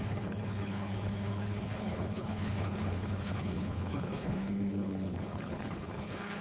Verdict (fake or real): fake